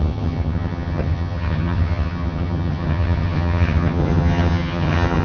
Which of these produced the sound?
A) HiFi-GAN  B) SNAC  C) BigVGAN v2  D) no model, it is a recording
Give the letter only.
A